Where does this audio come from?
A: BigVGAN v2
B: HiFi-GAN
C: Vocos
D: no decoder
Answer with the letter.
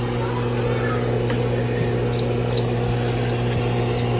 D